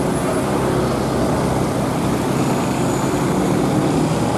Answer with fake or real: real